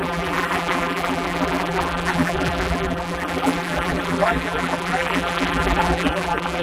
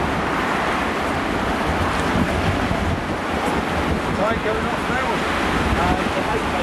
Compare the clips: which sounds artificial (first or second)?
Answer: first